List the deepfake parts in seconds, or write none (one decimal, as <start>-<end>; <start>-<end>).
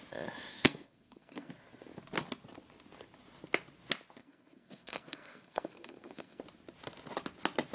0.5-1.5; 4.2-6.4